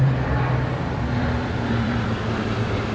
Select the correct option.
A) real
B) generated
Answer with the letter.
B